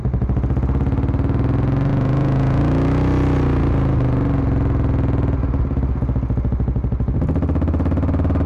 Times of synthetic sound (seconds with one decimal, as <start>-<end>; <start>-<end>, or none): 1.9-2.6